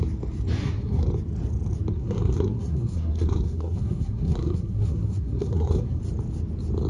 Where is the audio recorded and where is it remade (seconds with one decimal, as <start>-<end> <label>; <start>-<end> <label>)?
0.0-0.6 recorded; 0.6-1.1 remade; 1.1-1.9 recorded; 1.9-6.0 remade; 6.0-6.9 recorded